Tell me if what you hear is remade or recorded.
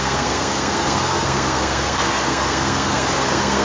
remade